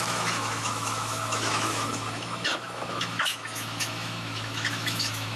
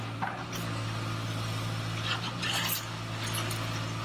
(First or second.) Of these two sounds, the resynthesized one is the first